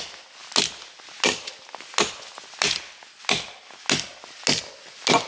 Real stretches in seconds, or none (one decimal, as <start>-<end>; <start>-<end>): 0.0-5.3